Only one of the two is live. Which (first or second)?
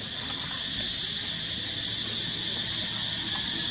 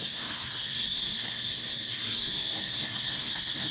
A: first